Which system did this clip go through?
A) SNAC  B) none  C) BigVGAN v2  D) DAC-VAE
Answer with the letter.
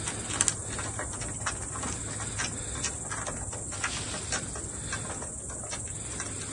B